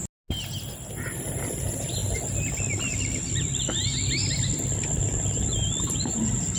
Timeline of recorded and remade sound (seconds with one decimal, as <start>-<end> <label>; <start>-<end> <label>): 0.0-6.6 recorded